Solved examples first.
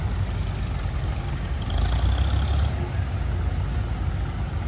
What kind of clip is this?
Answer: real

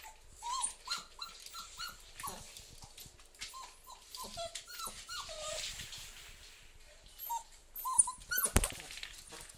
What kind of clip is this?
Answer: real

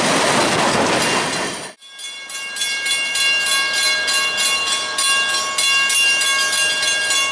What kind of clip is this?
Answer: real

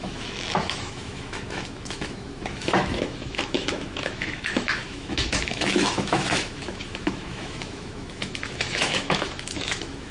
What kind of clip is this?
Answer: fake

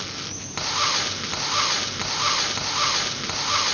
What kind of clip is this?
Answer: real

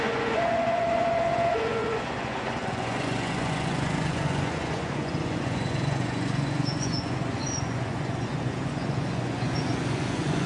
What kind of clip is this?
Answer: fake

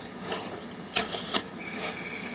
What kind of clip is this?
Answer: fake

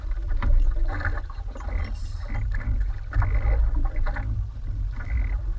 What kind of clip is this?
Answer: real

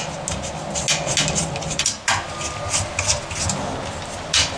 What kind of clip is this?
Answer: real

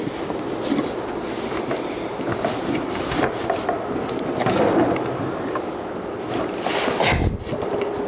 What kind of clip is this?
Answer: real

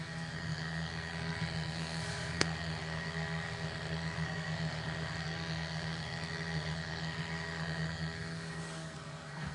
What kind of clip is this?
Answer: fake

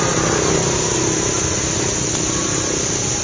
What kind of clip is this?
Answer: real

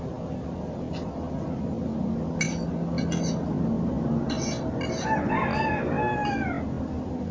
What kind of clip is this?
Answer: real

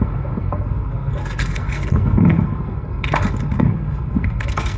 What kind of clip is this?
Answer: fake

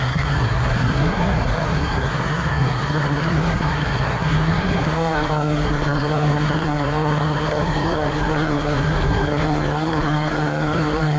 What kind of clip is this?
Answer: fake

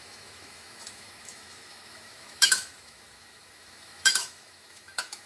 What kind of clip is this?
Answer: fake